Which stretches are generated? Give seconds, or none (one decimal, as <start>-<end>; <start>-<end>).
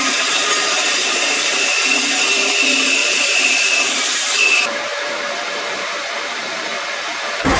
0.0-7.6